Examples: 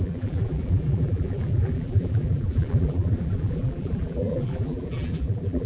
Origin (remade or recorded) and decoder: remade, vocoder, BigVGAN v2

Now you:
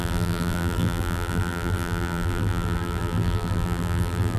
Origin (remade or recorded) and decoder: remade, vocoder, BigVGAN v2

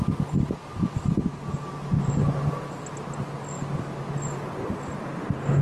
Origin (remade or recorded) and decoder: recorded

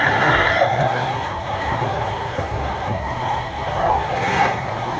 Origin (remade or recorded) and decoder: remade, codec, SNAC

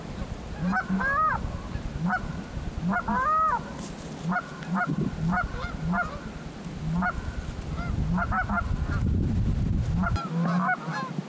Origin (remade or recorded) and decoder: recorded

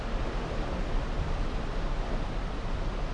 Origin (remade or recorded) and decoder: remade, vocoder, BigVGAN v2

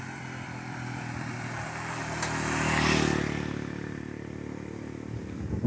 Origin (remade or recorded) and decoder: recorded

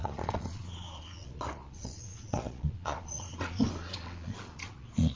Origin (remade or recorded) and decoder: remade, vocoder, Vocos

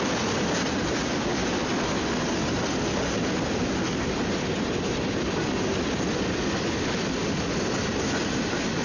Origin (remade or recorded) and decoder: recorded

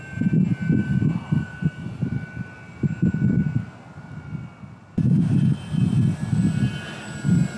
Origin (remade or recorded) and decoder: recorded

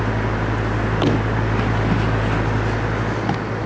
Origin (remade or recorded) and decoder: recorded